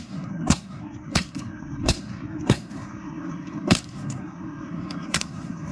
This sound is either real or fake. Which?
fake